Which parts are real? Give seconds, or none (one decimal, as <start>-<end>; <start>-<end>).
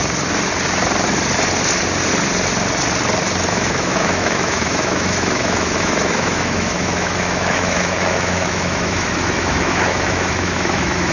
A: 0.0-3.5